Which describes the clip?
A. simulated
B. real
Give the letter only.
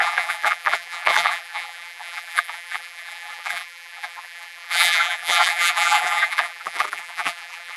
A